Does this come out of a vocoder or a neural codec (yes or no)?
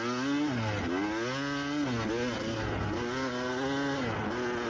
no